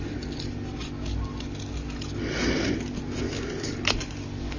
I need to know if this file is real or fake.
real